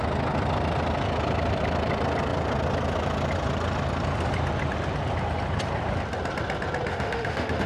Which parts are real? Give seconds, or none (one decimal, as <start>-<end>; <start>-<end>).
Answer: 0.0-6.9